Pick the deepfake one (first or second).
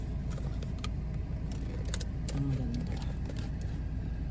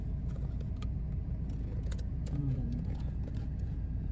second